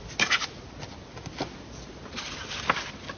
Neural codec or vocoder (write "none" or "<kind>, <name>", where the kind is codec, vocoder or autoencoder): none